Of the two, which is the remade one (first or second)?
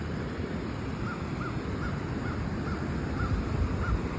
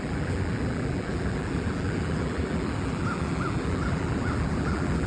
second